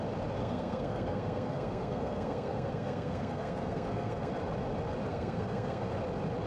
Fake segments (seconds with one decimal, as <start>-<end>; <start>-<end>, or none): 0.4-4.3; 5.1-5.9